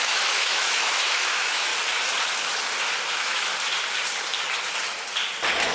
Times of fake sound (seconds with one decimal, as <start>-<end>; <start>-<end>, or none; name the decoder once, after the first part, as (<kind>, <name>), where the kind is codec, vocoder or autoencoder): 0.0-1.7 (autoencoder, DAC-VAE); 3.1-3.5